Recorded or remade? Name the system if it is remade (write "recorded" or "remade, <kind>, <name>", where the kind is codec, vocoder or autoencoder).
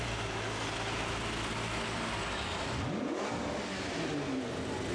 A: recorded